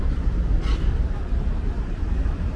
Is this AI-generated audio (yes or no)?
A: no